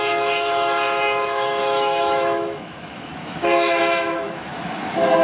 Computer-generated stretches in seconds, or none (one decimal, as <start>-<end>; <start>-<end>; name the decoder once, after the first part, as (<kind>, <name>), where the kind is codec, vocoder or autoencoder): 0.0-5.2 (autoencoder, DAC-VAE)